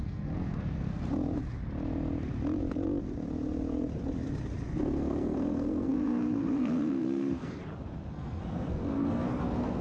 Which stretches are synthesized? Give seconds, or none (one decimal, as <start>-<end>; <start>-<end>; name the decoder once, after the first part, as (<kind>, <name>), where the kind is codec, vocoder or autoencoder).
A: 0.0-1.0 (codec, SNAC); 4.8-7.6; 8.1-9.8